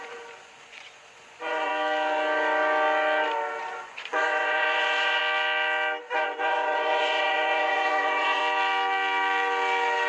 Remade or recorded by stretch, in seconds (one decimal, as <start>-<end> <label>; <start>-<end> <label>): 0.0-1.7 remade; 1.7-3.6 recorded; 3.6-5.2 remade; 5.2-6.0 recorded; 6.0-8.4 remade; 8.4-10.1 recorded